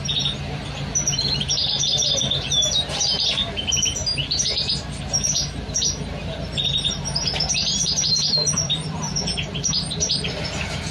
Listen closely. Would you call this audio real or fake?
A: fake